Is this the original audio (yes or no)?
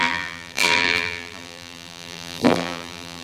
no